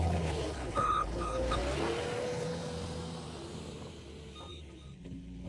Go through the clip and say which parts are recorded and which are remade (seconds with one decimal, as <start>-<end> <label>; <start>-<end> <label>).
0.0-1.6 remade; 1.6-2.2 recorded; 2.2-2.6 remade; 2.6-4.5 recorded; 4.5-5.5 remade